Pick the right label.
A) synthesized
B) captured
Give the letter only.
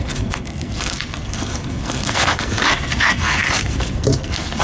A